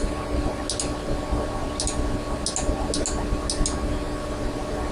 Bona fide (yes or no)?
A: yes